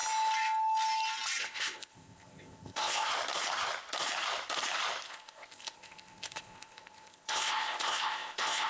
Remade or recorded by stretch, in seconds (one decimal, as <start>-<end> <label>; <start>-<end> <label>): 0.0-1.4 recorded; 1.4-3.1 remade; 3.1-5.1 recorded; 5.1-8.7 remade